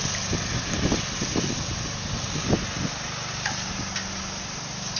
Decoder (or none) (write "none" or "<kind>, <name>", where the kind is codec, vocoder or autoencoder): none